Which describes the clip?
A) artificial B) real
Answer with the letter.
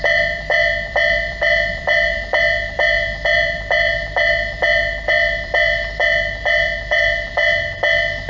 A